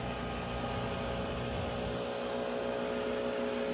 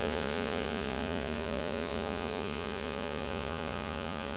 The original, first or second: first